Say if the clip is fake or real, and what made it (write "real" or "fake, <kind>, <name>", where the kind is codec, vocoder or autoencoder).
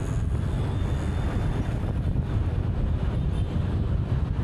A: real